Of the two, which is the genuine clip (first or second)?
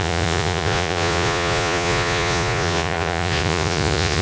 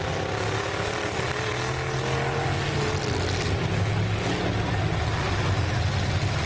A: second